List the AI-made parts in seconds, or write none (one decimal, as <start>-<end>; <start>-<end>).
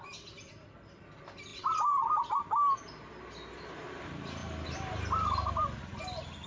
none